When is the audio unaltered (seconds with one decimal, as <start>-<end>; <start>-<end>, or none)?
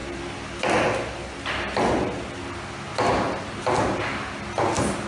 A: 0.0-2.9; 3.6-5.1